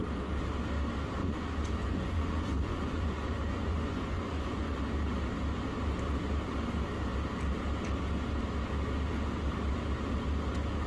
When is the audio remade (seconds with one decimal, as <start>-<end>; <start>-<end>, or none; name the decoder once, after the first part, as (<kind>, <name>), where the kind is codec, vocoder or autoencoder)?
1.2-4.8 (vocoder, Vocos)